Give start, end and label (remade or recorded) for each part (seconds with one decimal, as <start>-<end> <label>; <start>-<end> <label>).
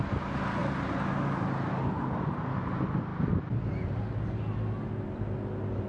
0.0-5.9 recorded